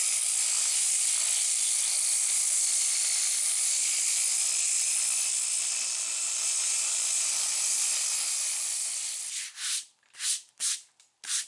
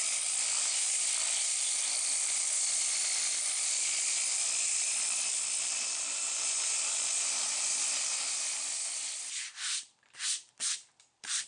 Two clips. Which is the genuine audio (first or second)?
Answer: first